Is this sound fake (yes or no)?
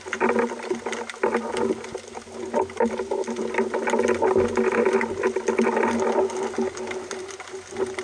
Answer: no